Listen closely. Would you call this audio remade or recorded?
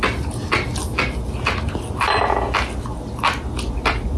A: recorded